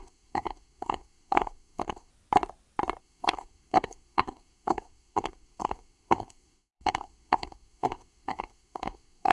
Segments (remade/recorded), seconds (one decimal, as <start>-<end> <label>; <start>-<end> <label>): 0.0-2.1 remade; 2.1-3.0 recorded; 3.0-9.3 remade